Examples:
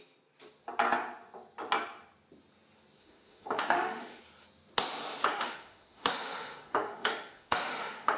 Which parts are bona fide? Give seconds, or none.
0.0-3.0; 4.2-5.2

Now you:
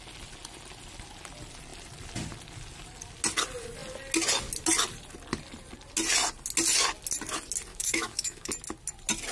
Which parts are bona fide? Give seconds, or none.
0.0-7.7; 8.5-9.3